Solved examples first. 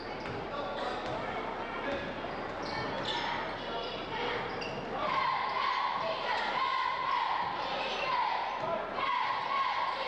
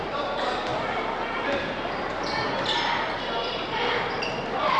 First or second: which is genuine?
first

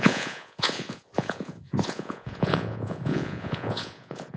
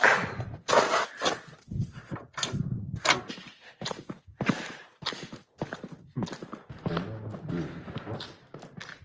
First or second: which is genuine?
second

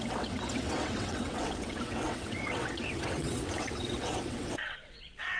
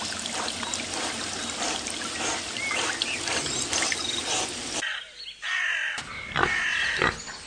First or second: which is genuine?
second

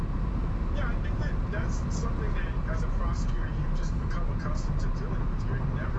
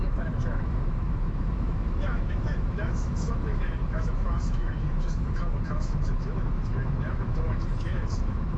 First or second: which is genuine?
first